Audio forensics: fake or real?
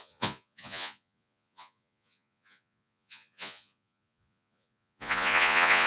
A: fake